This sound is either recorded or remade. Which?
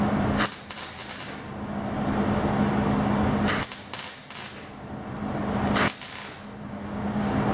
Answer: recorded